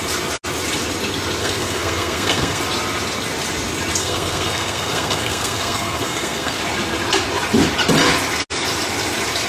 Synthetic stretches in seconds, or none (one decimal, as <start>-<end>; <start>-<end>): 1.4-2.6; 4.0-6.6